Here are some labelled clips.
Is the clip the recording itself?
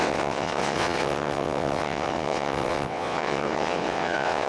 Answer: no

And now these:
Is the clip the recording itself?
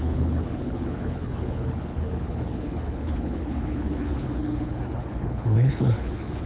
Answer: no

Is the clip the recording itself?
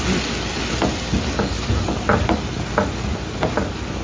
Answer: yes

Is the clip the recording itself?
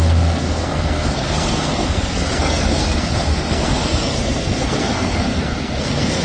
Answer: no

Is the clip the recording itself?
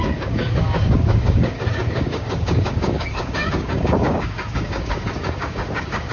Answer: no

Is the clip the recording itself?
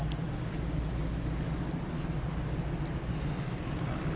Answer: yes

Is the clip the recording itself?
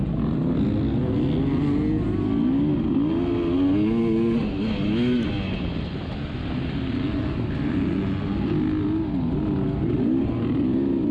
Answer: yes